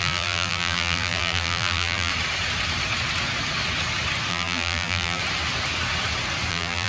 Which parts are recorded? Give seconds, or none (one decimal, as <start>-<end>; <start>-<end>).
2.1-4.3; 5.2-6.5

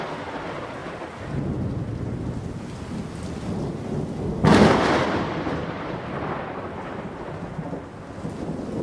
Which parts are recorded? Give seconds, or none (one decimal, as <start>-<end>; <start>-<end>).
0.0-0.8; 2.1-5.0; 6.0-8.8

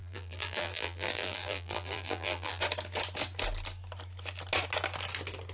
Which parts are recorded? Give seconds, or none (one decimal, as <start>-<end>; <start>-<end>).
2.6-5.5

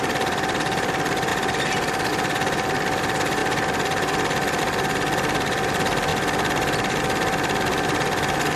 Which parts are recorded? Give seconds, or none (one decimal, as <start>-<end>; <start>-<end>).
1.3-2.1; 3.4-4.6; 6.1-7.0